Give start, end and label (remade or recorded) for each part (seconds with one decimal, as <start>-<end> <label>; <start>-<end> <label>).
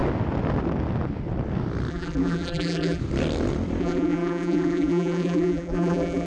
0.0-1.9 recorded; 1.9-3.0 remade; 3.0-3.8 recorded; 3.8-6.3 remade